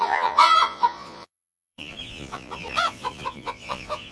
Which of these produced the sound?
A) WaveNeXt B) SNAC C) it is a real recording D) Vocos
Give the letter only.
D